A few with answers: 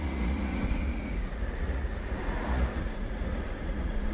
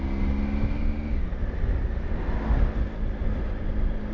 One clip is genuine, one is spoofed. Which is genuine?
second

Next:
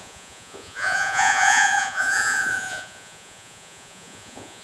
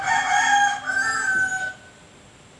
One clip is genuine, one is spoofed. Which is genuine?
second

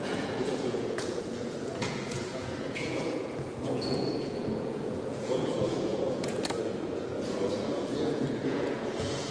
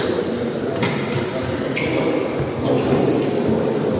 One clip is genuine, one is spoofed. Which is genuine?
second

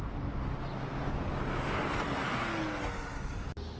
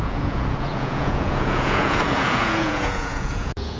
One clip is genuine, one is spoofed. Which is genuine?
first